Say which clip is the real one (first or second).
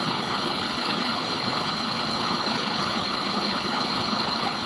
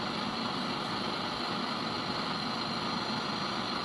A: second